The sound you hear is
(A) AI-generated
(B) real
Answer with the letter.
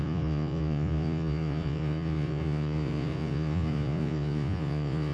A